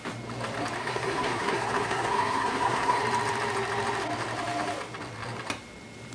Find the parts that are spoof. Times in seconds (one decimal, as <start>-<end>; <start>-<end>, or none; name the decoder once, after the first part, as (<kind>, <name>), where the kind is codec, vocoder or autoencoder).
0.8-3.0 (codec, SNAC)